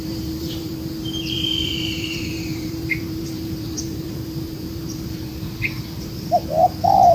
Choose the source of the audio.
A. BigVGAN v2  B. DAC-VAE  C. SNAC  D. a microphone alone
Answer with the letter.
A